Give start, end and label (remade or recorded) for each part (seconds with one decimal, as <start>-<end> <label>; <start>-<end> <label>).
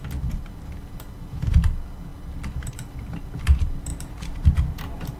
0.0-3.9 recorded; 3.9-5.2 remade